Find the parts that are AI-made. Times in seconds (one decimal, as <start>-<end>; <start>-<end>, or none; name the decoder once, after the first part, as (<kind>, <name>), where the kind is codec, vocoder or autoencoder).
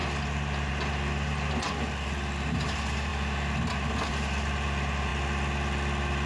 none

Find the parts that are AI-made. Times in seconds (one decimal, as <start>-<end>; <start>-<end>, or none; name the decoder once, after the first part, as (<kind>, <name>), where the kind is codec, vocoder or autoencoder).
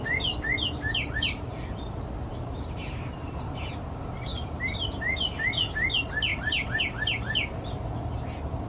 2.3-3.7 (vocoder, BigVGAN v2); 4.3-5.2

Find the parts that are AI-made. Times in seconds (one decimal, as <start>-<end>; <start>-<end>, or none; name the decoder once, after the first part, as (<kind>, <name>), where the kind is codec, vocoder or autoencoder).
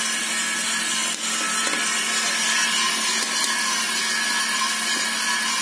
none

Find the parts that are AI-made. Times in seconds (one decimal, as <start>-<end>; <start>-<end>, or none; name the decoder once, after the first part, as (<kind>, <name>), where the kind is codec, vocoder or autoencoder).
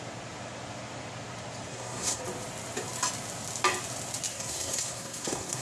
1.7-2.2 (codec, SNAC); 4.3-5.6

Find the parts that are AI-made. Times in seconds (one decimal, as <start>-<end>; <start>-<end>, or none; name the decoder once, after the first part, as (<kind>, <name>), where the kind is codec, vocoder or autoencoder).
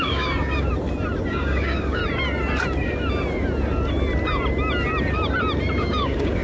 0.0-0.7 (codec, DAC); 1.3-2.0; 5.8-6.4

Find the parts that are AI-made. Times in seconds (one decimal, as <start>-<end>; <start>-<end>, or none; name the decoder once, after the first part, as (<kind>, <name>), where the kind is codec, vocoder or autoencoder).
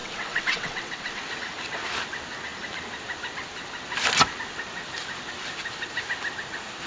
0.0-1.2 (vocoder, WaveNeXt)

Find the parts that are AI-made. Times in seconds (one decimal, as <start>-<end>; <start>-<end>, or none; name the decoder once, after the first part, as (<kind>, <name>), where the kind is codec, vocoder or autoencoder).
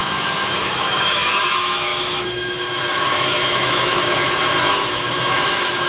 0.0-5.9 (autoencoder, DAC-VAE)